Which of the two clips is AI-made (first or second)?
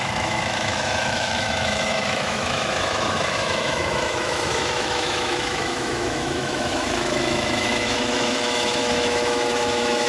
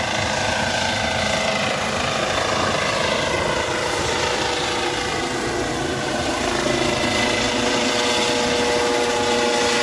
first